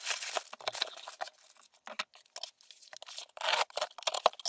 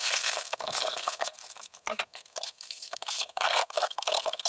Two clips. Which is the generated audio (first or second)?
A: second